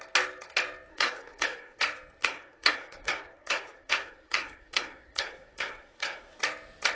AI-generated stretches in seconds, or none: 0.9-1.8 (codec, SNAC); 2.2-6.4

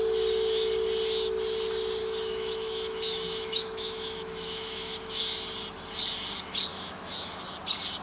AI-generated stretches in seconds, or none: 2.0-5.2 (autoencoder, DAC-VAE); 6.7-7.3

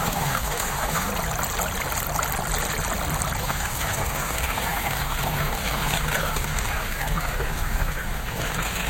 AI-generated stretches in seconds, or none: 0.0-1.1 (codec, DAC); 3.4-8.9

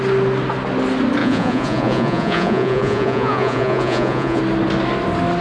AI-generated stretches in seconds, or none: 1.2-4.4 (vocoder, Vocos)

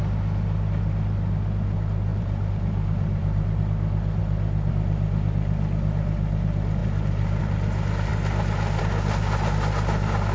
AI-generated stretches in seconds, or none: 2.1-3.6 (vocoder, BigVGAN v2); 6.8-7.4

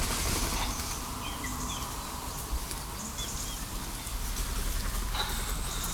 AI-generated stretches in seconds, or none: none

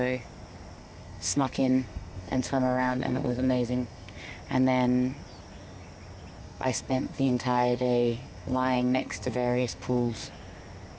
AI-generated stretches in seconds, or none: 0.8-4.2 (codec, SNAC); 6.4-10.3

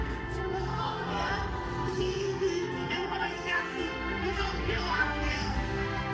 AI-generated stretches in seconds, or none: 0.0-1.3 (codec, SNAC); 2.0-6.1